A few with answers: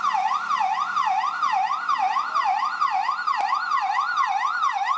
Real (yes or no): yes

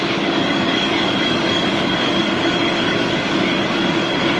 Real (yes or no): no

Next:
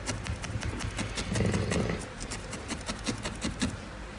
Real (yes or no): yes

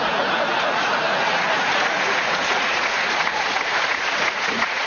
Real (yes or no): no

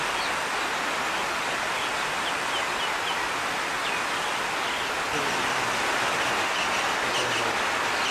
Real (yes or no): yes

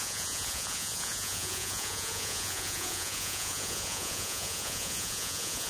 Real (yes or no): no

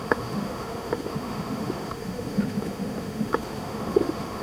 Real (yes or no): no